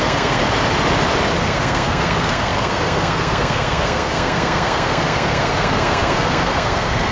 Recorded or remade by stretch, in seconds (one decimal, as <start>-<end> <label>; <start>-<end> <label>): 0.0-0.4 remade; 0.4-1.4 recorded; 1.4-7.1 remade